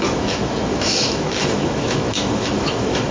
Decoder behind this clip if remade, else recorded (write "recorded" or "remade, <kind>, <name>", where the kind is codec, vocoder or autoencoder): remade, autoencoder, DAC-VAE